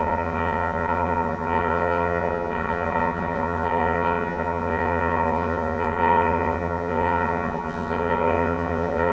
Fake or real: fake